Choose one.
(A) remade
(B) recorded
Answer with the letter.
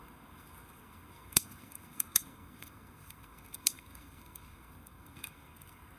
A